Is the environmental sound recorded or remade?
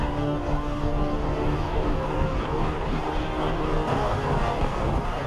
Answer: remade